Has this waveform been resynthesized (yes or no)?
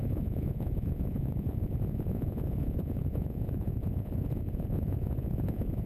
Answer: yes